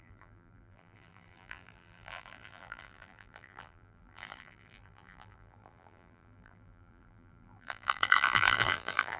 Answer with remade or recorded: remade